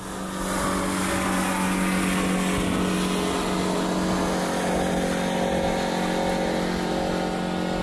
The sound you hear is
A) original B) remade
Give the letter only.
A